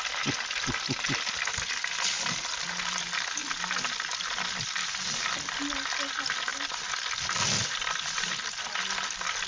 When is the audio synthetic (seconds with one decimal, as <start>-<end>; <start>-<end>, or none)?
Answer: none